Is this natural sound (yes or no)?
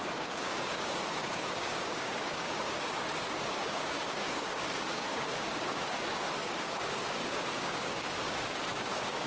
no